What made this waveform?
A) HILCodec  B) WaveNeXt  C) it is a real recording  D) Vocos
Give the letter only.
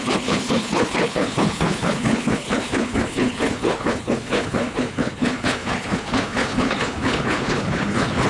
A